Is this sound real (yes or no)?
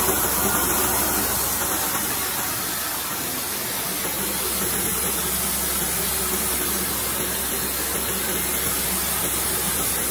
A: yes